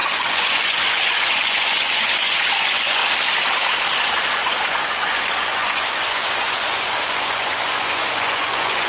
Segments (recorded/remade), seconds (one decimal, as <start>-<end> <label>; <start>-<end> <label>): 0.0-3.0 remade; 3.0-4.1 recorded; 4.1-8.9 remade